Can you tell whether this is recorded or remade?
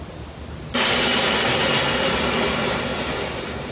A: recorded